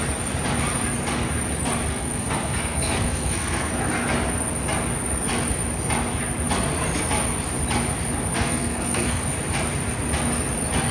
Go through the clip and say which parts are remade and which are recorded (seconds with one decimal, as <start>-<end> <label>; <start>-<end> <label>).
0.0-1.9 recorded; 1.9-3.7 remade; 3.7-8.3 recorded; 8.3-9.2 remade; 9.2-10.9 recorded